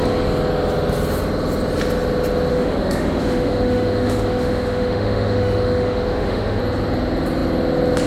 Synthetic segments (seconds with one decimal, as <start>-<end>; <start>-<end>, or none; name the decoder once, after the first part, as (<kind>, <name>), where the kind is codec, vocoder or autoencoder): 2.5-6.6 (autoencoder, DAC-VAE)